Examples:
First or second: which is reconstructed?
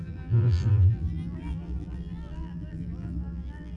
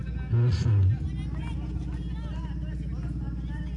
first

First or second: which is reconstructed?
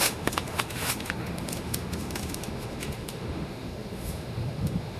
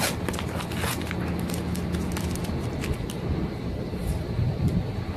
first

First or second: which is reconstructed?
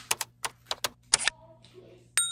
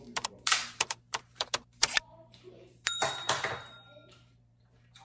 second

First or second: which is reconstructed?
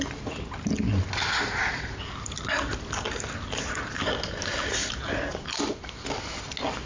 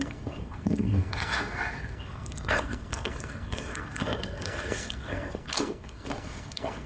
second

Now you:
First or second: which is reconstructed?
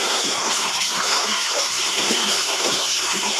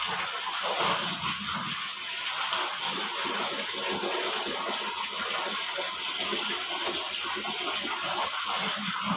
first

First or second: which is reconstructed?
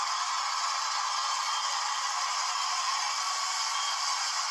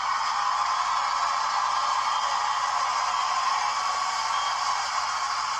first